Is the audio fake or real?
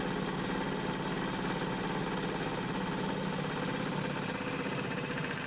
real